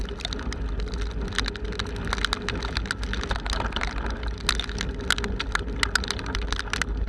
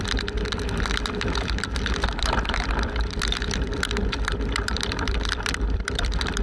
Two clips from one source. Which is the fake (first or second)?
second